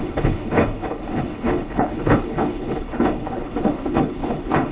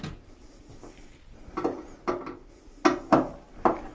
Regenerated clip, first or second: first